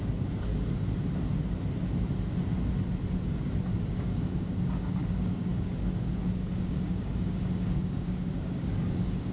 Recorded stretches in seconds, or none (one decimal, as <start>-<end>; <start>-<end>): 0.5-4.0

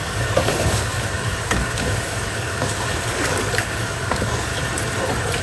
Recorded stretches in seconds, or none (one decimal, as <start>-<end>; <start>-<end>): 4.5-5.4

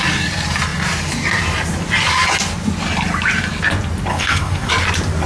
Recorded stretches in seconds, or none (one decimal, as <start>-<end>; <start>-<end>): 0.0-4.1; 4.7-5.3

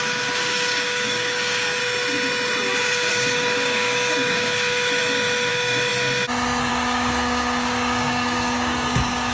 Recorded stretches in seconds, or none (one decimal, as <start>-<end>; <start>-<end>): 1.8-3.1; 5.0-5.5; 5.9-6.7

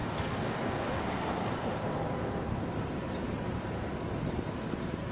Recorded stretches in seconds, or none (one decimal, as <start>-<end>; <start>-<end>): 1.0-5.1